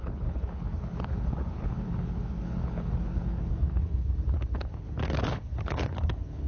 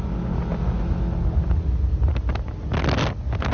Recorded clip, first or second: second